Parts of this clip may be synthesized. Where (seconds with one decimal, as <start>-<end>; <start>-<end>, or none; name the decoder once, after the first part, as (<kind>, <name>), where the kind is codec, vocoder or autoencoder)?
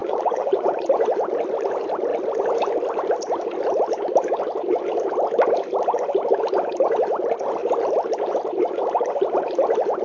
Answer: 0.0-0.9 (vocoder, Vocos)